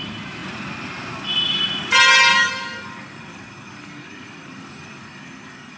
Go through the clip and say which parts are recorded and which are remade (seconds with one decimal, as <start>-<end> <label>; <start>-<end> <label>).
0.0-2.3 recorded; 2.3-5.8 remade